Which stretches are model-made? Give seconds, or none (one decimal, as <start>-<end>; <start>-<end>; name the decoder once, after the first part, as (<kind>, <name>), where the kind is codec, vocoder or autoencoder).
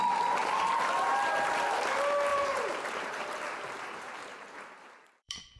2.3-5.6 (vocoder, BigVGAN v2)